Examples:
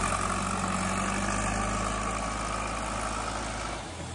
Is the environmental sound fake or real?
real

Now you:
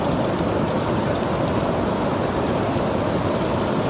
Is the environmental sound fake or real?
real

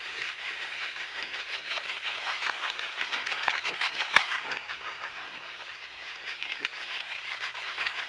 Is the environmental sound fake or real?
fake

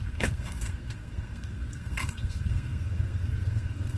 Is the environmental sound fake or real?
fake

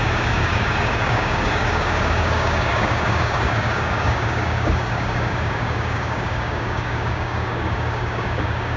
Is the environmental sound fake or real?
fake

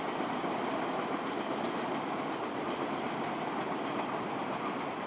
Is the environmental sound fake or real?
real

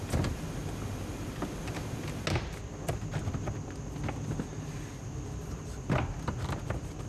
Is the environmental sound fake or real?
real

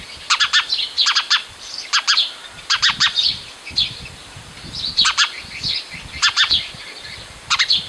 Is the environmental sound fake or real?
fake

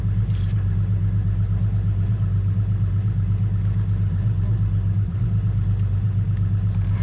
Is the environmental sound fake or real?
real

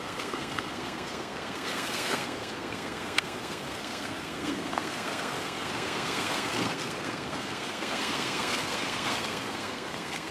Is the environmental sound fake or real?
fake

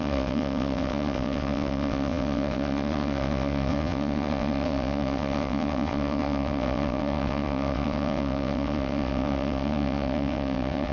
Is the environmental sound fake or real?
fake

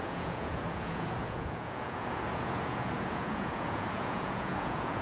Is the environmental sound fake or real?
fake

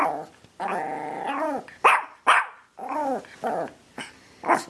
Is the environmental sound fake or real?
real